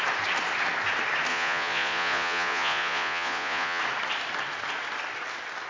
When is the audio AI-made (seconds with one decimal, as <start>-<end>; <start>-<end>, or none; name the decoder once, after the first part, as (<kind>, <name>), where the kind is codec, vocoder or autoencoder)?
1.3-3.8 (vocoder, Vocos)